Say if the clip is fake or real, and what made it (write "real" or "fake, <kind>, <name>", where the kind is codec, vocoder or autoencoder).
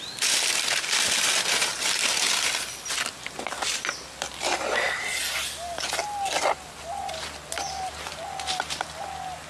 real